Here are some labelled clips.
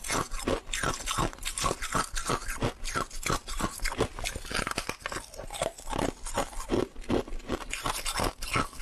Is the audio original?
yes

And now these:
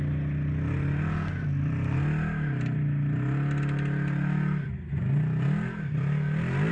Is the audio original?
yes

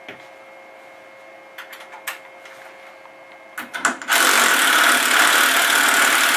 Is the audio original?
yes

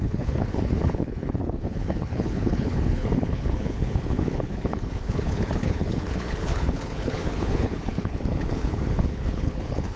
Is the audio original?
no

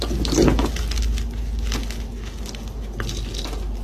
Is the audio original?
yes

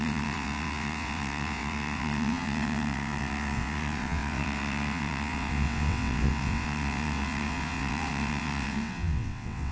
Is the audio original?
no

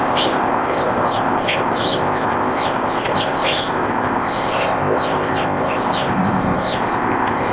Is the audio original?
no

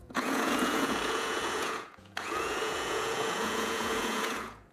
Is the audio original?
no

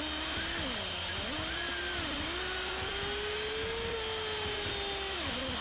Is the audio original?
yes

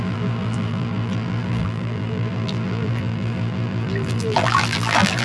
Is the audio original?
no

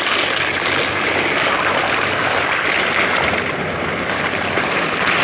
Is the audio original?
yes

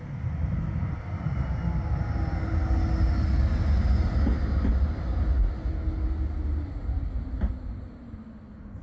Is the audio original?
yes